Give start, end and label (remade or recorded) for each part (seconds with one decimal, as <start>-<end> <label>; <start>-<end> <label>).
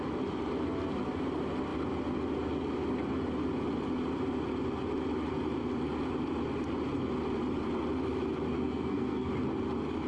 0.0-8.5 recorded; 8.5-9.3 remade; 9.3-10.1 recorded